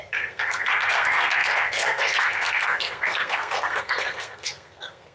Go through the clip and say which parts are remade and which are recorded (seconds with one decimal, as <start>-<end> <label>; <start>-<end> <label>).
0.0-5.1 remade